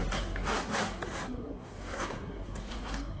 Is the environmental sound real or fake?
fake